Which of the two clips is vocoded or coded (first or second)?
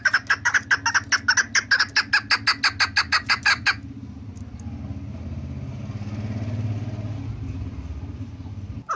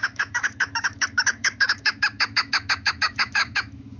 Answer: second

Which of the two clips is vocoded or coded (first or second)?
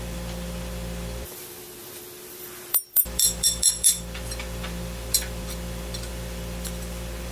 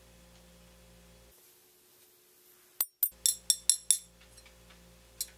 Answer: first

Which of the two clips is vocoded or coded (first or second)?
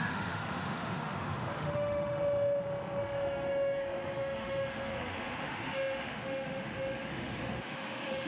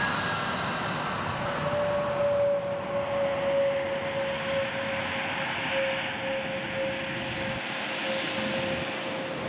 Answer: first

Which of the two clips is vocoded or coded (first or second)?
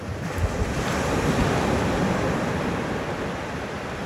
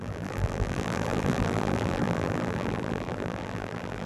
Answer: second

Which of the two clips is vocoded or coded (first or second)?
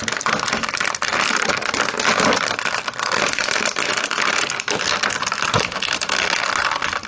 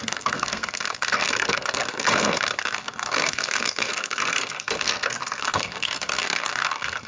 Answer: second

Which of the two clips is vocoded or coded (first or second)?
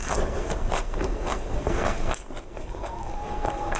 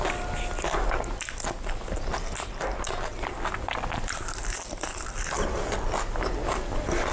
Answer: first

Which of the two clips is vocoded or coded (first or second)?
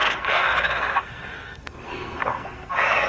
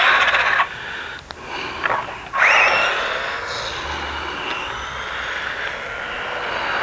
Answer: first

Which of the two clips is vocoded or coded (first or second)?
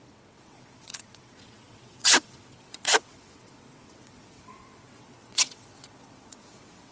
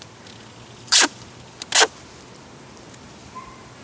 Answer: first